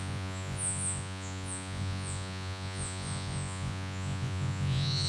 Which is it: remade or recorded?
remade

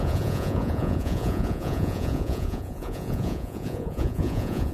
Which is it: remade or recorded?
remade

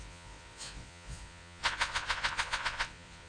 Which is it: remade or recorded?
remade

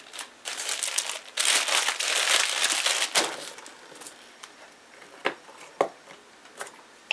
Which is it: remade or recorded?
recorded